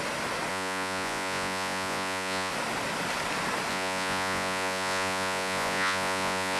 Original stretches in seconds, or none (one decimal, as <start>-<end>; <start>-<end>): 0.0-0.5; 2.5-3.7